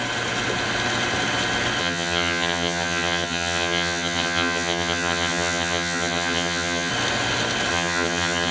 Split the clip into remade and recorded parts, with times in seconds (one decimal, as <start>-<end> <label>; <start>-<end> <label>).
0.0-1.8 recorded; 1.8-6.9 remade; 6.9-7.7 recorded; 7.7-8.5 remade